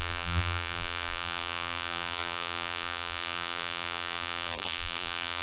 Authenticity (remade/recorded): remade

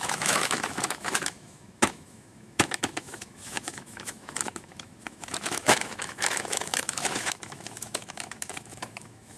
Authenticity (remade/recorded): remade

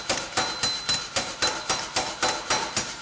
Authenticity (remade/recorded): recorded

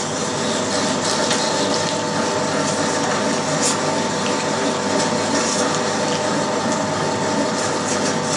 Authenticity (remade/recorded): recorded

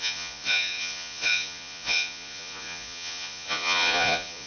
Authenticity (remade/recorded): remade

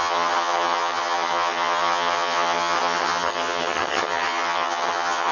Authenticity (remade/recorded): remade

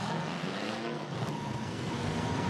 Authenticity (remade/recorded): remade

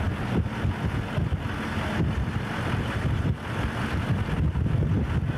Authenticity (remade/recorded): recorded